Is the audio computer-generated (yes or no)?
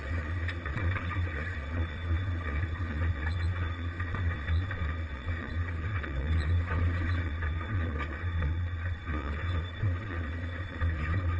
yes